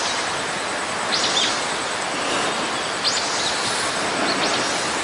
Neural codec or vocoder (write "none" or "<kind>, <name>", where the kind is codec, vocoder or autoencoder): none